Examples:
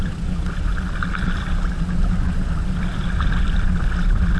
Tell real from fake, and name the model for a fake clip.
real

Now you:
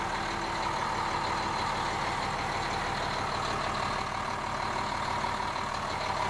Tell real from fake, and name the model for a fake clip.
real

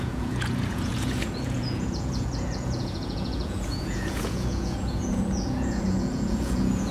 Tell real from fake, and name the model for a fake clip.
fake, vocoder, Vocos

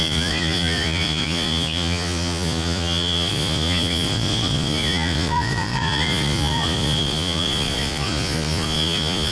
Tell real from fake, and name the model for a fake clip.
fake, vocoder, Vocos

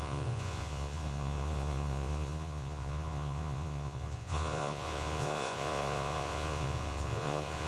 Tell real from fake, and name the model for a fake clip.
fake, vocoder, Vocos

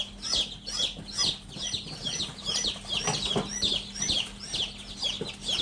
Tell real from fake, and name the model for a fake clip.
real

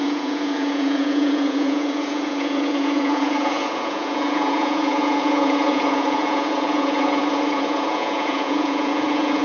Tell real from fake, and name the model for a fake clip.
fake, vocoder, Vocos